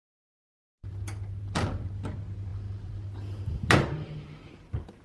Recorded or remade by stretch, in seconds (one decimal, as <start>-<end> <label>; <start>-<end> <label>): 0.0-0.5 recorded; 0.5-2.1 remade; 2.1-2.5 recorded; 2.5-5.0 remade